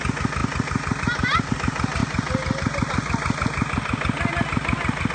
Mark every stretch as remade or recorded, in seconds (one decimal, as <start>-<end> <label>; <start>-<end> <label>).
0.0-5.1 recorded